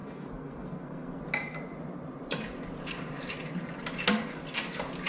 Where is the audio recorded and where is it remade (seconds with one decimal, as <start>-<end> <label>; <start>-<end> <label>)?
0.0-1.2 remade; 1.2-5.1 recorded